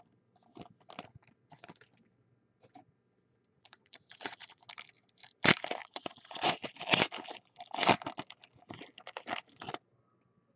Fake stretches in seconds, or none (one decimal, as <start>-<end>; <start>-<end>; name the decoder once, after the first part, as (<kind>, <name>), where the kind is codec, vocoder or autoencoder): 3.5-4.6 (vocoder, Vocos); 5.8-6.7